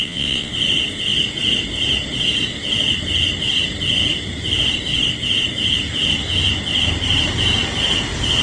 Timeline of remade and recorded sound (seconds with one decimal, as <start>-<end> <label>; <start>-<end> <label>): 0.0-0.5 remade; 0.5-8.4 recorded